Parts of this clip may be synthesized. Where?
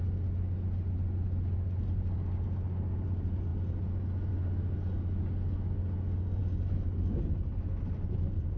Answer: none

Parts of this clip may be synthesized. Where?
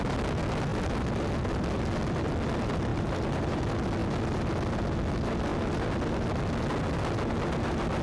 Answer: 2.9-3.6 (vocoder, BigVGAN v2)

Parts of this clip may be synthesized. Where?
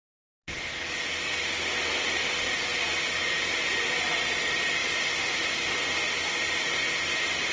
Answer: 4.8-5.7 (vocoder, BigVGAN v2)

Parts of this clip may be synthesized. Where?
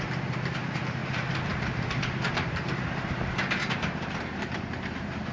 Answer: 0.0-5.3 (vocoder, BigVGAN v2)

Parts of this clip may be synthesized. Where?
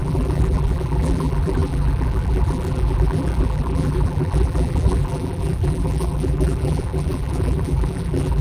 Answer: 0.0-8.4 (vocoder, BigVGAN v2)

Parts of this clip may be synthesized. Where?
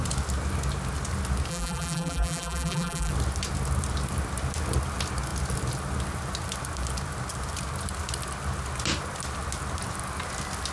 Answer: 1.5-3.1 (vocoder, BigVGAN v2)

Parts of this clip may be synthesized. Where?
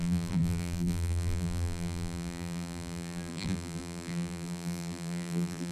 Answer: 0.0-5.7 (vocoder, BigVGAN v2)